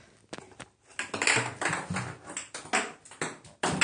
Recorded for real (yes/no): yes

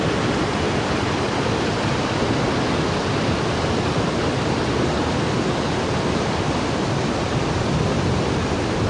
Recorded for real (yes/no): yes